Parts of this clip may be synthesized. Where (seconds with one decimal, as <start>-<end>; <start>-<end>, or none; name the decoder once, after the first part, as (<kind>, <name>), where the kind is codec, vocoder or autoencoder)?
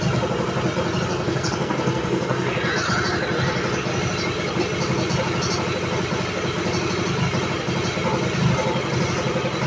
1.1-2.6 (codec, SNAC)